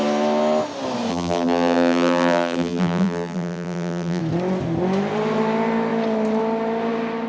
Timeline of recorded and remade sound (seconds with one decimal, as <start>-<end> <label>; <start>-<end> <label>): 0.0-1.1 recorded; 1.1-4.2 remade; 4.2-7.3 recorded